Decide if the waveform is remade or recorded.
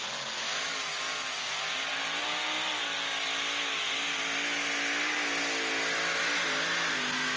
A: recorded